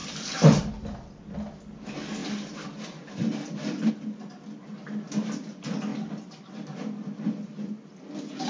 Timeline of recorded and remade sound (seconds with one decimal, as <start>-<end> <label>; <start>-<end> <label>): 0.0-0.7 remade; 0.7-2.2 recorded; 2.2-3.9 remade; 3.9-5.9 recorded; 5.9-7.3 remade; 7.3-8.5 recorded